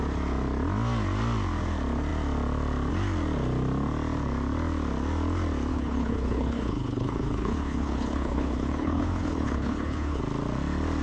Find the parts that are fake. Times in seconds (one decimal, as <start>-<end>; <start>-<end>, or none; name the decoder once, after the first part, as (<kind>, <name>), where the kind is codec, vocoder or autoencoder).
5.7-10.2 (codec, HILCodec)